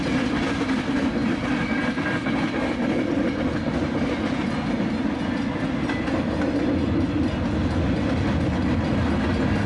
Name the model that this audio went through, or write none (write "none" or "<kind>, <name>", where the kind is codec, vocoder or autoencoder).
none